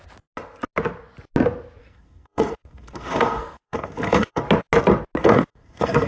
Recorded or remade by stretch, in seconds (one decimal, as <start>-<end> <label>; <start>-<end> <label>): 0.0-1.8 recorded; 1.8-4.4 remade; 4.4-5.2 recorded; 5.2-6.1 remade